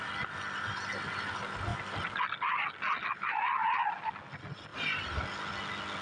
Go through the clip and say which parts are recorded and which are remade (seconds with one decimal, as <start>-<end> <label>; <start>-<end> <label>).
0.0-4.7 recorded; 4.7-5.2 remade; 5.2-6.0 recorded